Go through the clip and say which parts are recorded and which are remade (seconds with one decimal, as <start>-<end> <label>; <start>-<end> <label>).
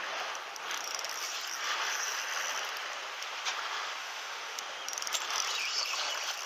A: 0.0-4.0 recorded; 4.0-4.6 remade; 4.6-6.5 recorded